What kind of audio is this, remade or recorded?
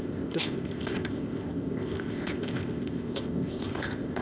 remade